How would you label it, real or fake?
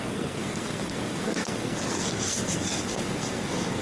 fake